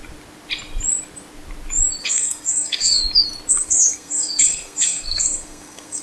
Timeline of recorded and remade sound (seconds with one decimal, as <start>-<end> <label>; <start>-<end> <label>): 0.0-2.0 recorded; 2.0-3.0 remade; 3.0-3.5 recorded; 3.5-6.0 remade